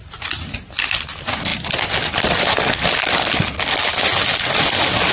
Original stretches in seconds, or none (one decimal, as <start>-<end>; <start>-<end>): 0.0-5.1